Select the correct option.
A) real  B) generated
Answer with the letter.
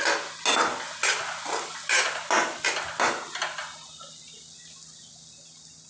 A